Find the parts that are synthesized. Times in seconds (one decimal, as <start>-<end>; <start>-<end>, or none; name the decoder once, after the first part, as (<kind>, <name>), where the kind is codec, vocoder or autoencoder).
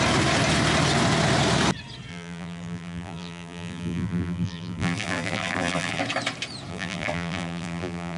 2.1-6.0 (vocoder, BigVGAN v2); 6.7-8.2